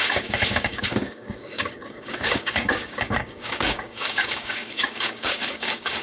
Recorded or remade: remade